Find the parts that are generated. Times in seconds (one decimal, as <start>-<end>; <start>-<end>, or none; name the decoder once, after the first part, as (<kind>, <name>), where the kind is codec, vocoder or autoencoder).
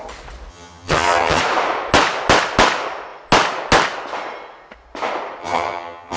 0.5-1.4 (vocoder, HiFi-GAN); 5.4-6.2